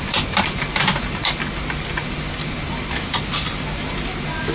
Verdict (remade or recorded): recorded